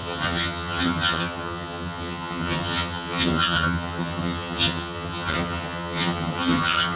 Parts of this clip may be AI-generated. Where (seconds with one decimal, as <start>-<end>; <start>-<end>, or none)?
0.0-7.0